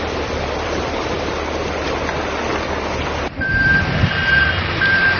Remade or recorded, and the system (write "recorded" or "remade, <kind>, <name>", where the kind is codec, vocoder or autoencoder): remade, vocoder, BigVGAN v2